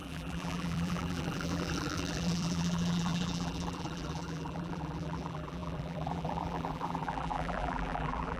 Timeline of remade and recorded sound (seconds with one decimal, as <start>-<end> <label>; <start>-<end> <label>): 0.0-8.4 remade